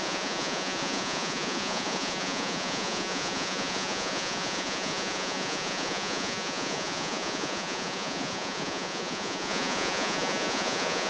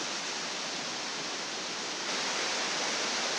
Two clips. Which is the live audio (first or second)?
second